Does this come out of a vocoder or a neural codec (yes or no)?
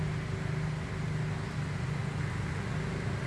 no